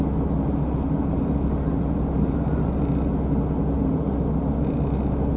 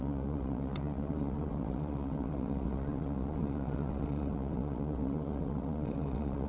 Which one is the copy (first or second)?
second